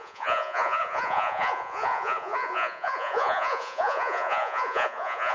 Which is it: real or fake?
fake